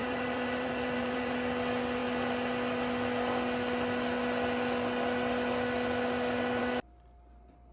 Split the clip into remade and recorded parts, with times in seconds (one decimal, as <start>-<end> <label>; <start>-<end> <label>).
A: 0.0-1.3 remade; 1.3-7.7 recorded